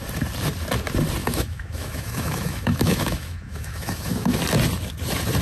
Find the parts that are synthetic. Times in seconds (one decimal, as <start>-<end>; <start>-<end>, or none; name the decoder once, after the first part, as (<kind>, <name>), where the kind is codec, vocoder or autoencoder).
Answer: 1.2-4.4 (autoencoder, DAC-VAE)